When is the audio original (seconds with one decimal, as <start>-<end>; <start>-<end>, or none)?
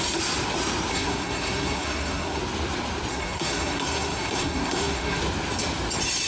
0.0-0.9; 2.4-3.1; 5.2-6.3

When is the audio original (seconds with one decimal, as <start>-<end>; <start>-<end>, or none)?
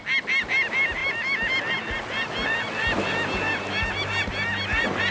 0.0-5.1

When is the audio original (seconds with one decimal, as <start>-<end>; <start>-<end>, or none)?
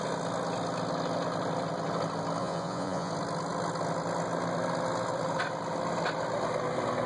0.0-2.4; 3.1-7.1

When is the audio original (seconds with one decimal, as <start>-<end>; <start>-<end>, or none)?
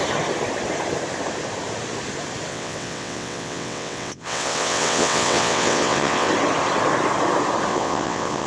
0.0-2.5; 6.3-7.7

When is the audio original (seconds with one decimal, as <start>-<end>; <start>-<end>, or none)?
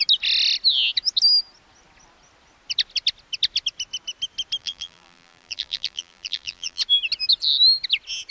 0.0-4.6; 6.8-8.3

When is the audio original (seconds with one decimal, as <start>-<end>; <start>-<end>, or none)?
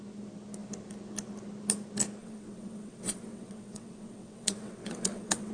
0.0-2.2